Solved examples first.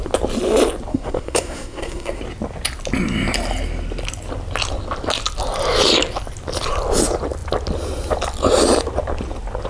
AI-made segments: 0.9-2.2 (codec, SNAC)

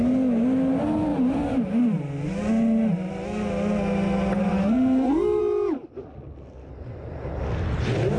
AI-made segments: 4.5-5.4 (codec, SNAC)

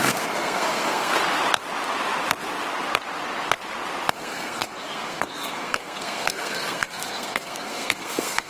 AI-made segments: 0.0-1.1 (codec, SNAC); 4.1-8.5

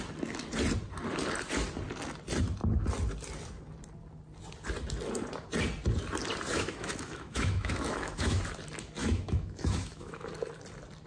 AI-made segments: 6.5-8.4 (autoencoder, DAC-VAE); 9.0-10.3

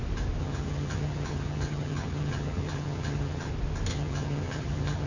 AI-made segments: 0.4-3.5 (vocoder, HiFi-GAN); 3.9-5.1